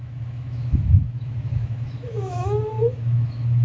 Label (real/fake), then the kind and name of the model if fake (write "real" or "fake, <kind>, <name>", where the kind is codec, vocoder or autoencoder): fake, autoencoder, DAC-VAE